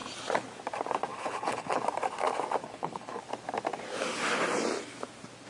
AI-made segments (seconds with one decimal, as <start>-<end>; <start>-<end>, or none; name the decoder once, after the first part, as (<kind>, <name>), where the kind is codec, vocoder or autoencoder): 1.1-1.8 (codec, HILCodec); 2.6-3.2